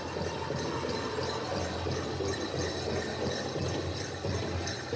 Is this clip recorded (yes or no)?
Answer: yes